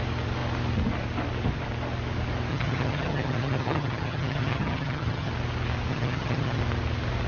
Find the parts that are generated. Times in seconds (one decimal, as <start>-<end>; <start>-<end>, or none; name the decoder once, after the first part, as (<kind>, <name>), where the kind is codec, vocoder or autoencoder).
2.5-5.3 (vocoder, HiFi-GAN); 5.9-6.6